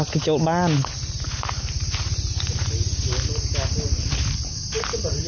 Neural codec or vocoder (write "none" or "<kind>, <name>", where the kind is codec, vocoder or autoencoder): none